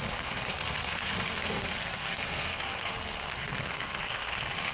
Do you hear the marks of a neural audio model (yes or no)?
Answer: yes